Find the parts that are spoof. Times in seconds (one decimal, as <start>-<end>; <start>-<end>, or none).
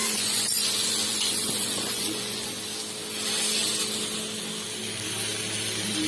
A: 0.0-2.6